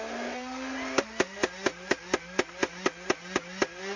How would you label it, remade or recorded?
recorded